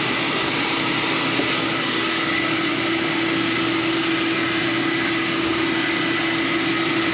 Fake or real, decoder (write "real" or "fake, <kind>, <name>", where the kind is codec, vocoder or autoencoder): real